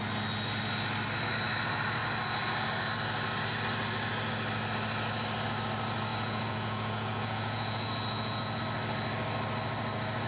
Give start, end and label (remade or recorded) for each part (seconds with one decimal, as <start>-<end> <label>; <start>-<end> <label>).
0.0-6.1 recorded; 6.1-8.6 remade; 8.6-10.3 recorded